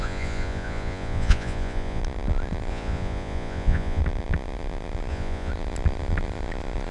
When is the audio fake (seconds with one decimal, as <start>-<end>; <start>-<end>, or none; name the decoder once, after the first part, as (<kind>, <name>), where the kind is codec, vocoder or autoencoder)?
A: 0.0-2.0 (vocoder, Vocos); 2.7-4.0; 5.1-5.5